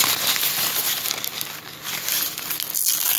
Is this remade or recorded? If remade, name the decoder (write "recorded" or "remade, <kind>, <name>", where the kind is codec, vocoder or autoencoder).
recorded